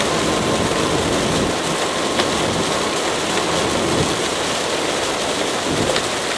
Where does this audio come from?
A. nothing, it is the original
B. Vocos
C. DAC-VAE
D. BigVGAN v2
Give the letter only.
A